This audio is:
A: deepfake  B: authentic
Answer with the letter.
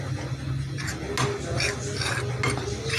B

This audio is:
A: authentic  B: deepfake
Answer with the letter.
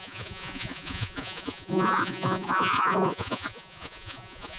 B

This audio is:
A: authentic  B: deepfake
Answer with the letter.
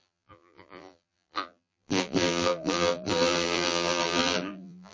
B